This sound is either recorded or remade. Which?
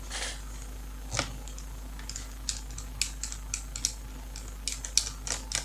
recorded